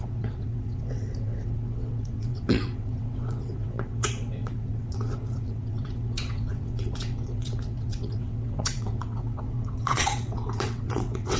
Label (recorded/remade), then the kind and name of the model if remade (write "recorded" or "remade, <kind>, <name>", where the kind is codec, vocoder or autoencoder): remade, vocoder, WaveNeXt